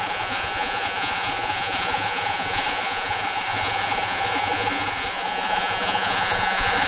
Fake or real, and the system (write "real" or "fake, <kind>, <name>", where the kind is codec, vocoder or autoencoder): fake, vocoder, Vocos